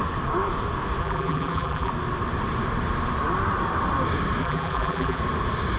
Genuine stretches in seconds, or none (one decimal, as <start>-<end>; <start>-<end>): 0.0-1.0; 1.9-4.4; 5.2-5.8